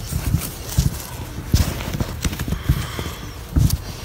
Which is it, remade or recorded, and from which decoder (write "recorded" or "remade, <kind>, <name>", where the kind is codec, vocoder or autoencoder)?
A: recorded